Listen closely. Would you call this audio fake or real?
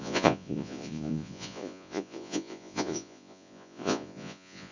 fake